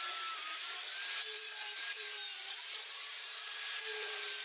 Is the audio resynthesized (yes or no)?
yes